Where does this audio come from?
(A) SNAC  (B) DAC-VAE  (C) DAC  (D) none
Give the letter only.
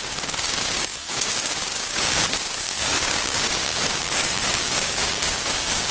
C